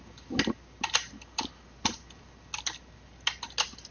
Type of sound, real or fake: real